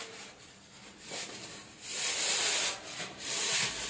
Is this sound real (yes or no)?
yes